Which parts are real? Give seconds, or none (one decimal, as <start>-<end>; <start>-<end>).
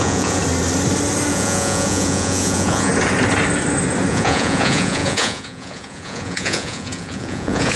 0.4-1.3; 2.9-4.1